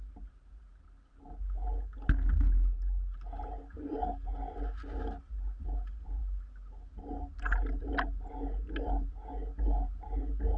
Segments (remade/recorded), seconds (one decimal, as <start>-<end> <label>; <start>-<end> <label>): 0.0-10.6 recorded